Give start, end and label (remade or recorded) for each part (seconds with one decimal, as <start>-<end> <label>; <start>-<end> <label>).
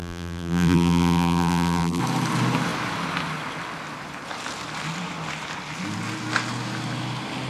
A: 0.0-2.0 remade; 2.0-7.5 recorded